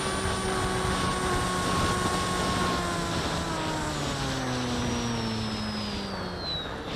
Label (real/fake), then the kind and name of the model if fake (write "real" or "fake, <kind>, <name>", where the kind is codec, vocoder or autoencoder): real